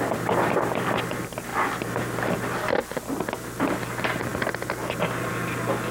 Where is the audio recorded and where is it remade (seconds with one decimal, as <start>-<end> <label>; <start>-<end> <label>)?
0.0-1.5 recorded; 1.5-2.3 remade; 2.3-5.9 recorded